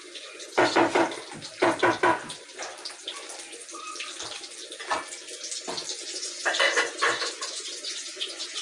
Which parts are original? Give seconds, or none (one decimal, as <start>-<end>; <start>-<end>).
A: 0.8-6.0